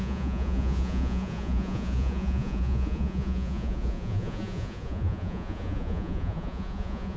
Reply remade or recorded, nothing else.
remade